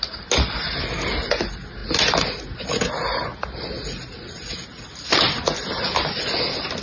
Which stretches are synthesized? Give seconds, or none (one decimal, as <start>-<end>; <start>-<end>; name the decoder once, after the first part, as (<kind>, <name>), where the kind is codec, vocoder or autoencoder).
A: none